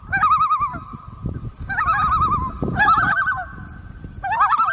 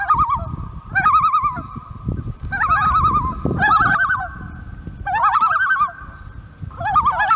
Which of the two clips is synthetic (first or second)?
second